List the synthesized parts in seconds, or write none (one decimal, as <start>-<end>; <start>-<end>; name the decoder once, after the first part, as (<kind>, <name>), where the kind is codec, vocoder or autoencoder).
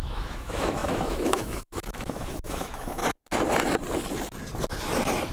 0.0-3.0 (autoencoder, DAC-VAE)